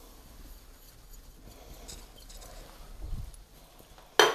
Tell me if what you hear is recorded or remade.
recorded